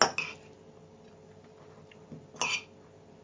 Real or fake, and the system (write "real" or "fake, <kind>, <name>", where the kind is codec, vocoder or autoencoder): real